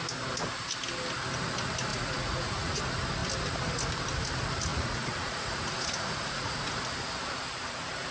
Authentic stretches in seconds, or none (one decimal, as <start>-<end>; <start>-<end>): 0.0-1.9; 2.8-4.7; 6.8-8.1